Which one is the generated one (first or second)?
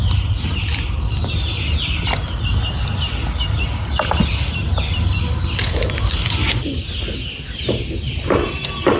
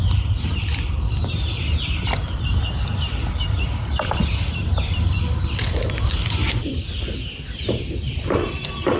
second